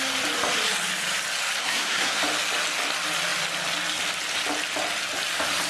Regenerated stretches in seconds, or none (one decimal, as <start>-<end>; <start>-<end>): 1.6-2.2